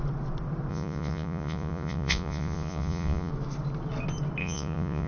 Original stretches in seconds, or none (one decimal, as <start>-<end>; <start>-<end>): 0.0-0.7; 3.3-4.4